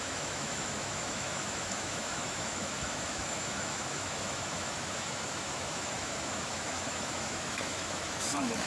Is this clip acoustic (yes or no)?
no